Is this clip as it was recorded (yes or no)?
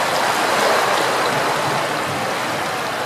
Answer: yes